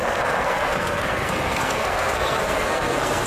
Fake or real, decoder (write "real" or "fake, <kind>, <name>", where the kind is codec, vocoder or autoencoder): fake, codec, SNAC